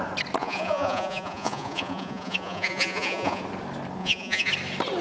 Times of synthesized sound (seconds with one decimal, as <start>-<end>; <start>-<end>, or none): 0.4-3.4; 4.0-4.5